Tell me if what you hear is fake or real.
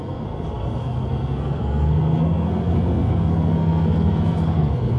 fake